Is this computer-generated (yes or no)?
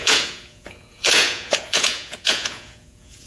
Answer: yes